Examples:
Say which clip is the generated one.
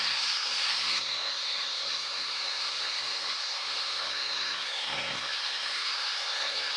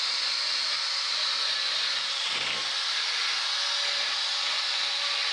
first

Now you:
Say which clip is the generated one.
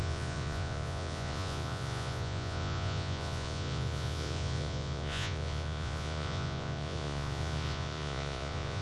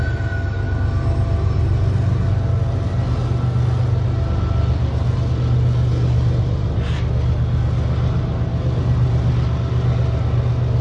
first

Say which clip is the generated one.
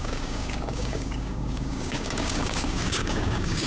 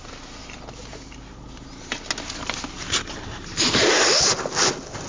first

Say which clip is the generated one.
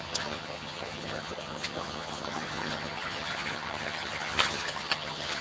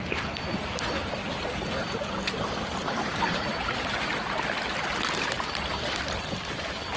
first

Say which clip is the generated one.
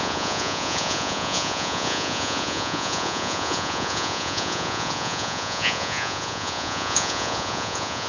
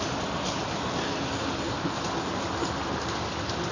first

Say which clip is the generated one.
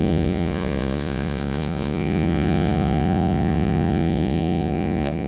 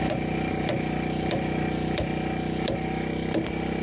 first